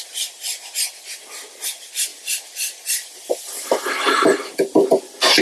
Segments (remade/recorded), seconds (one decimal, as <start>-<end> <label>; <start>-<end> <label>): 0.0-2.1 recorded; 2.1-5.0 remade; 5.0-5.4 recorded